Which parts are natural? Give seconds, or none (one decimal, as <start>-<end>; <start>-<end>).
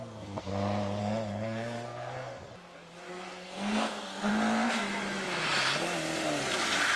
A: 0.5-1.0; 2.5-3.1; 4.3-7.0